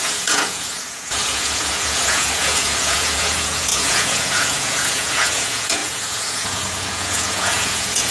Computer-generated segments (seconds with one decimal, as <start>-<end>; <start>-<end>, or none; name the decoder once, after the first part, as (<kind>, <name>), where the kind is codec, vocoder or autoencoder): 0.0-8.1 (vocoder, Vocos)